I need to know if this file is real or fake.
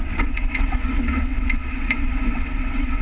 fake